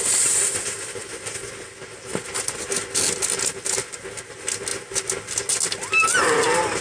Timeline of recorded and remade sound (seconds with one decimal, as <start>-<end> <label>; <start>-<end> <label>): 0.0-6.8 recorded